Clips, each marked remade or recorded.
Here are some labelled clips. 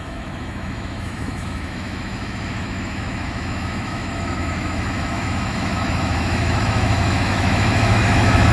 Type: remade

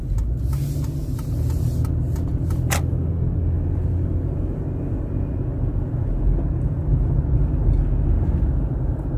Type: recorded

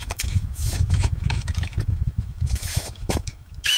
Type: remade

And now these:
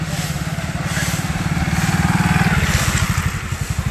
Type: recorded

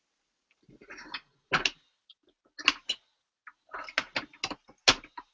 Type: recorded